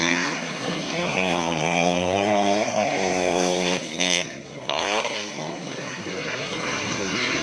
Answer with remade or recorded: remade